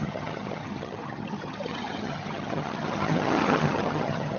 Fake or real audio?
fake